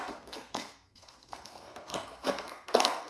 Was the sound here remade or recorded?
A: remade